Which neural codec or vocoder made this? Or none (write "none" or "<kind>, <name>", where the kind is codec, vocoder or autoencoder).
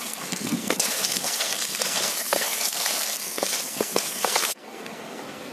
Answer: codec, SNAC